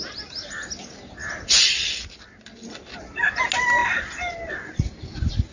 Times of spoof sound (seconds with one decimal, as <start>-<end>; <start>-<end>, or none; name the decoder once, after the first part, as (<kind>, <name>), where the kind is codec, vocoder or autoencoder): none